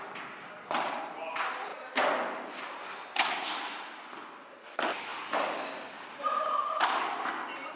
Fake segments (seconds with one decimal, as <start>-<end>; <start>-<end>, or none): 5.1-7.8